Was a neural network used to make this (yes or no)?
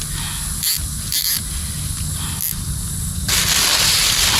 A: no